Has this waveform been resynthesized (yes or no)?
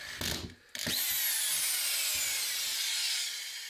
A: no